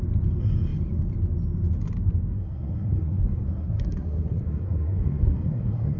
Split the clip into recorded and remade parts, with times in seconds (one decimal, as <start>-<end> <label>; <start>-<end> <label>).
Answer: 0.0-2.3 recorded; 2.3-6.0 remade